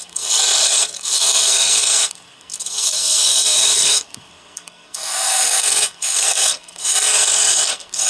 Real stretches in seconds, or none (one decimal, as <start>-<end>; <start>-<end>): none